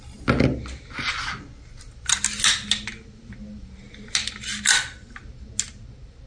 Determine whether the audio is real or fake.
real